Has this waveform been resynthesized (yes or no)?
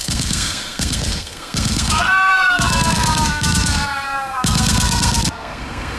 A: yes